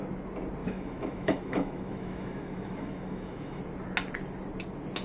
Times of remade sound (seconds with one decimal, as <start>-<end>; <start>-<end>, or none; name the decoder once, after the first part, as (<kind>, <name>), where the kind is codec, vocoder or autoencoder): 0.6-3.6 (autoencoder, DAC-VAE)